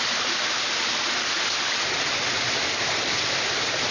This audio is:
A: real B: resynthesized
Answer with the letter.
A